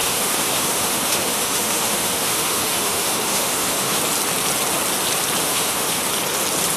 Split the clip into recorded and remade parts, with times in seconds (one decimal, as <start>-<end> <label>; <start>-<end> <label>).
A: 0.0-4.0 remade; 4.0-5.4 recorded; 5.4-6.0 remade; 6.0-6.8 recorded